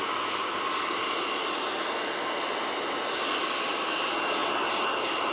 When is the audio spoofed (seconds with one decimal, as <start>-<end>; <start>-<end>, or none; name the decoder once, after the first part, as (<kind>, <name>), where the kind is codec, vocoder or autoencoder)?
none